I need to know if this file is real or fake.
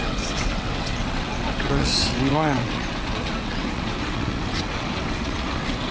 fake